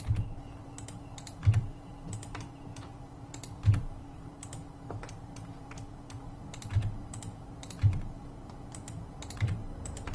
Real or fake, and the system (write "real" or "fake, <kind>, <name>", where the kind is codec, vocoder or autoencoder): fake, vocoder, BigVGAN v2